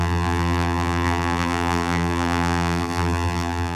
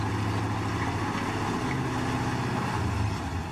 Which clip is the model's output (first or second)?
first